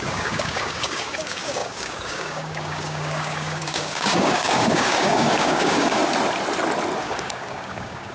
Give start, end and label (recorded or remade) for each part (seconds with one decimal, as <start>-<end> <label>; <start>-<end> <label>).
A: 0.0-6.0 remade; 6.0-7.0 recorded; 7.0-8.1 remade